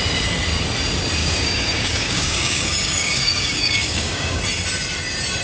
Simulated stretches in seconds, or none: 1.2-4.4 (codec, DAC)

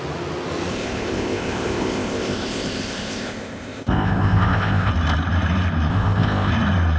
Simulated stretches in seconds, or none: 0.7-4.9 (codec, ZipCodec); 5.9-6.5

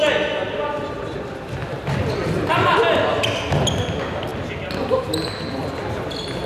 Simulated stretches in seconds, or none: none

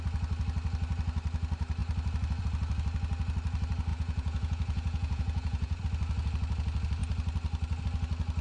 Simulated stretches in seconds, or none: 3.9-5.8 (vocoder, Vocos)